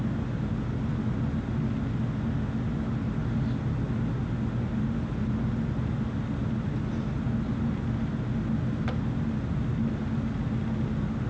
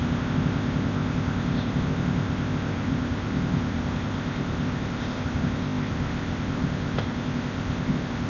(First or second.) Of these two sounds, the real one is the first